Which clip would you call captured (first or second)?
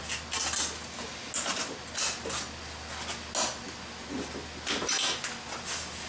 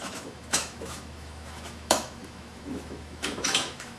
first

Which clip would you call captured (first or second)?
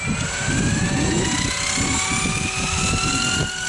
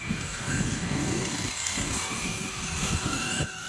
first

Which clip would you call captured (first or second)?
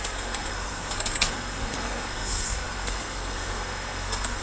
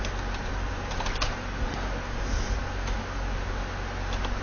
second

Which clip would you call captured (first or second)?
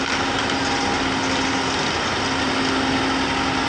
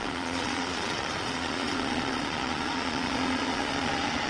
first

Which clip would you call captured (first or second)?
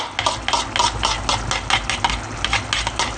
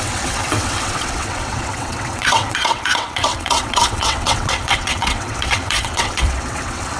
first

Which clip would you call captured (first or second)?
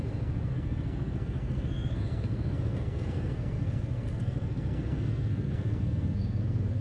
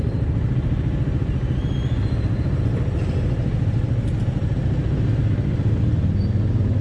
second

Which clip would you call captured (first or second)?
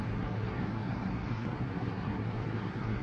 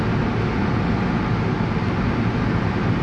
second